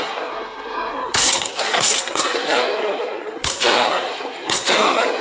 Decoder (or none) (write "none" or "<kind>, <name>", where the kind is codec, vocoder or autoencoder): codec, SNAC